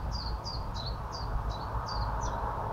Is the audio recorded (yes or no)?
yes